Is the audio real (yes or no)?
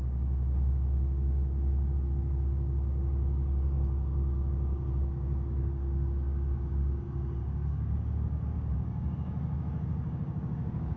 no